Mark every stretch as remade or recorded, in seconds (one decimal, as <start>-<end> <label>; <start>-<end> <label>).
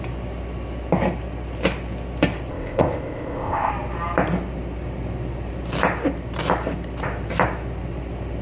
0.0-2.5 recorded; 2.5-3.7 remade; 3.7-8.4 recorded